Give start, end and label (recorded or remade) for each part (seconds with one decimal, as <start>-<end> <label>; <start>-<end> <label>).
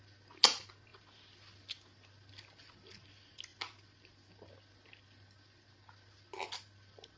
0.0-7.2 recorded